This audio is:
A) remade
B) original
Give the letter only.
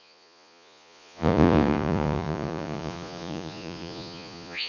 A